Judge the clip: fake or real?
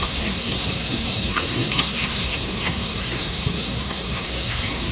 fake